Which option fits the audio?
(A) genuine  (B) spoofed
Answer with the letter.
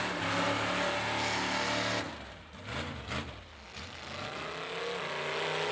A